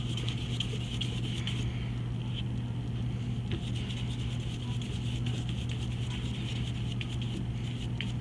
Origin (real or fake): real